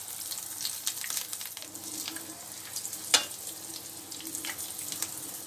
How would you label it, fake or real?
real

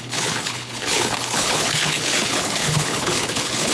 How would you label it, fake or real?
fake